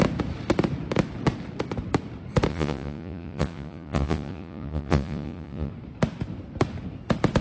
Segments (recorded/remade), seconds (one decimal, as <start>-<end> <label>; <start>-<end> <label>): 0.0-2.5 recorded; 2.5-5.7 remade; 5.7-7.4 recorded